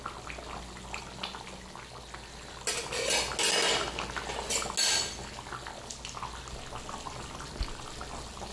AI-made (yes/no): no